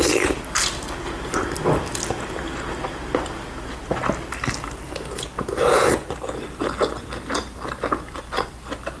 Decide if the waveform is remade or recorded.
recorded